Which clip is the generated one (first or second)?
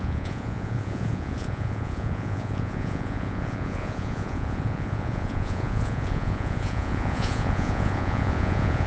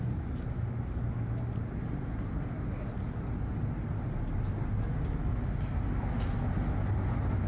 first